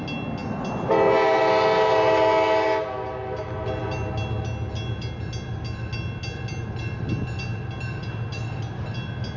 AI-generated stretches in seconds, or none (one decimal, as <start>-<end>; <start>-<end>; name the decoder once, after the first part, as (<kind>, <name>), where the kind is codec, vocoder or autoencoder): none